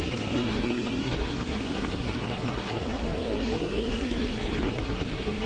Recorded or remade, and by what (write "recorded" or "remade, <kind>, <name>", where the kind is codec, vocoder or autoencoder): remade, codec, SNAC